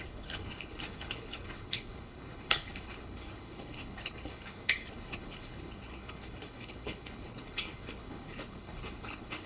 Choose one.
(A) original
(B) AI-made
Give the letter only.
B